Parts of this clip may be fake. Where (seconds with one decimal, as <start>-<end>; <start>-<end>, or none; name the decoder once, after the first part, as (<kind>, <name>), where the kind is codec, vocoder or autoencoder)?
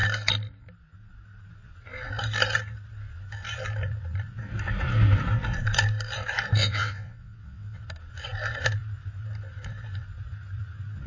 6.6-7.8 (vocoder, WaveNeXt)